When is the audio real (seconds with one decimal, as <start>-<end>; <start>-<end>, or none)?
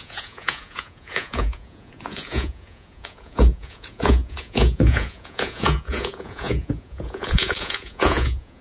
none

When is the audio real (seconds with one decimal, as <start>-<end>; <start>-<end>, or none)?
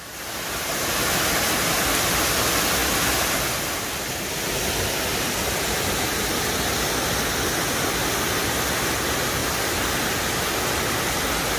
0.0-11.6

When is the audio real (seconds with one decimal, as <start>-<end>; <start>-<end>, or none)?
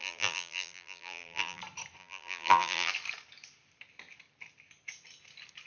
1.6-2.0; 2.9-5.7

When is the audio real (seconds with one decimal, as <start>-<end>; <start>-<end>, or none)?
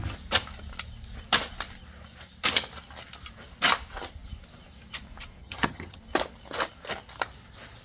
0.0-5.4; 6.0-7.8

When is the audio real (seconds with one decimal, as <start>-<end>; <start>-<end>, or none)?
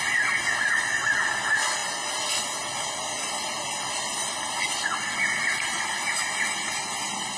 0.0-7.4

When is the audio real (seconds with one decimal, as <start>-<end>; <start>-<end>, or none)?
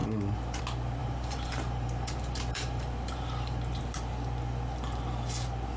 0.0-1.0; 3.8-5.8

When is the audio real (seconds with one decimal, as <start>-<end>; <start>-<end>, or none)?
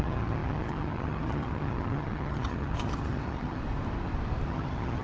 3.6-4.5